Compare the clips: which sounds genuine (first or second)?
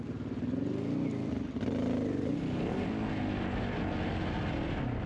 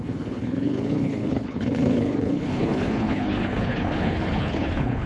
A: first